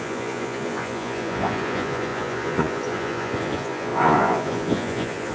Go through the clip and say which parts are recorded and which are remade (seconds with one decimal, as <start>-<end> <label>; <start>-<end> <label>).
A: 0.0-5.3 remade